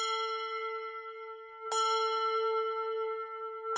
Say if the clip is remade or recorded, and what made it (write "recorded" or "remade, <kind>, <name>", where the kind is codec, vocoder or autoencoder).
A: recorded